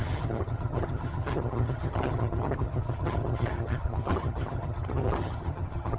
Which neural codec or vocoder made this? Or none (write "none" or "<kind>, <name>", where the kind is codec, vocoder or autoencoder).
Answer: vocoder, HiFi-GAN